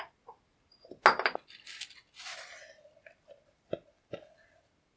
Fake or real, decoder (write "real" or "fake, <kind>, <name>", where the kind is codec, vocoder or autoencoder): real